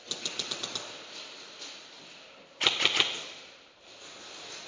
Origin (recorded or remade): recorded